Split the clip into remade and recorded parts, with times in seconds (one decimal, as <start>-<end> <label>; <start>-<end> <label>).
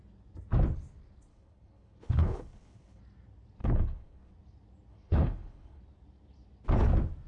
0.0-1.3 recorded; 1.3-3.0 remade; 3.0-3.6 recorded; 3.6-4.3 remade; 4.3-4.9 recorded; 4.9-5.8 remade; 5.8-7.3 recorded